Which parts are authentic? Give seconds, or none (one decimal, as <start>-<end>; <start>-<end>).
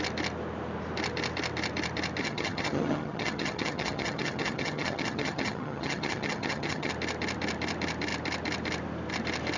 0.0-2.2; 6.9-9.6